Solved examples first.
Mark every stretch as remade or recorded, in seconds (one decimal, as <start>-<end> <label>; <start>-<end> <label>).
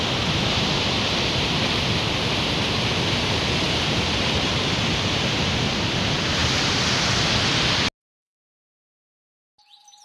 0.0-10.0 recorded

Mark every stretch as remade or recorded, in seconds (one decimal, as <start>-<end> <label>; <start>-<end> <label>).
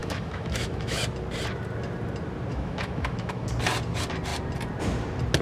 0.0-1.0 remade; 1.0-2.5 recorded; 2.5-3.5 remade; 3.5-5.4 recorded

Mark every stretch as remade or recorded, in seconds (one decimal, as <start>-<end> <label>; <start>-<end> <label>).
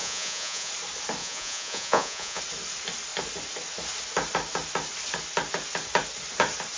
0.0-0.7 remade; 0.7-1.2 recorded; 1.2-2.4 remade; 2.4-6.8 recorded